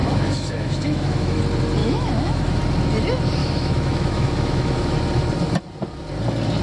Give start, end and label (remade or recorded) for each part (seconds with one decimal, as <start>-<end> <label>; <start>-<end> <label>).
0.0-1.4 remade; 1.4-1.8 recorded; 1.8-2.6 remade; 2.6-3.4 recorded; 3.4-5.0 remade; 5.0-6.6 recorded